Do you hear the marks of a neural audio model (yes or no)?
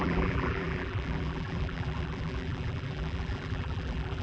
yes